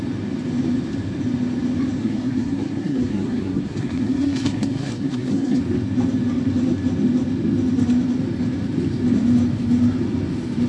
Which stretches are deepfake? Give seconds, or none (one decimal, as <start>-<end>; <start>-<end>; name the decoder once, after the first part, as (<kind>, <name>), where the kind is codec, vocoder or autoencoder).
2.0-5.6 (codec, SNAC)